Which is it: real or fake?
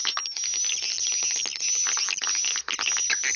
real